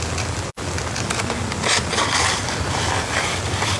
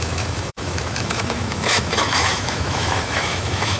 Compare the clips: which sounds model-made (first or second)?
second